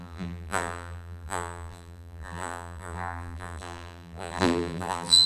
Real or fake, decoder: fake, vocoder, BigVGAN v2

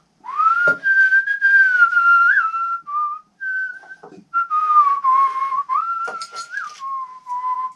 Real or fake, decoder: real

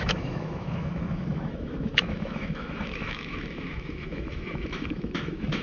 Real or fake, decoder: fake, autoencoder, DAC-VAE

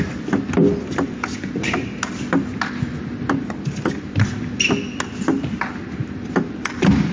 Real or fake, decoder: real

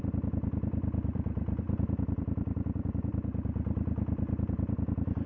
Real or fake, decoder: fake, vocoder, BigVGAN v2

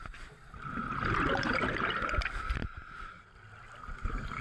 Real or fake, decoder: real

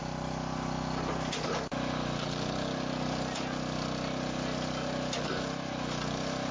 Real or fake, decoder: real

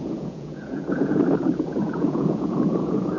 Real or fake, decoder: fake, vocoder, Vocos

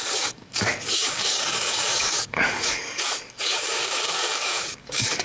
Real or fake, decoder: fake, codec, DAC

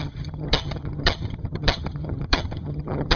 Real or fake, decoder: fake, vocoder, HiFi-GAN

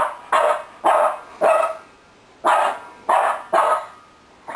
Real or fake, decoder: real